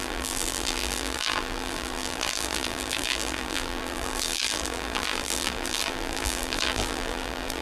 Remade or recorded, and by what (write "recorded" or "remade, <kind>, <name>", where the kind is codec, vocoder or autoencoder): remade, vocoder, BigVGAN v2